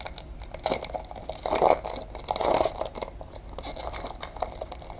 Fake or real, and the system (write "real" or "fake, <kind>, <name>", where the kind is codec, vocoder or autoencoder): real